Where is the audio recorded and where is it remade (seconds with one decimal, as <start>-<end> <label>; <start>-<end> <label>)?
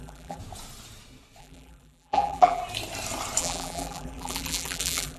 0.0-0.4 remade; 0.4-1.4 recorded; 1.4-2.6 remade; 2.6-3.4 recorded; 3.4-5.2 remade